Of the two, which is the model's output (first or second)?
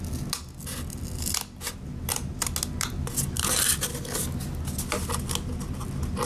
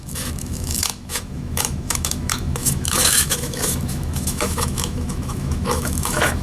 second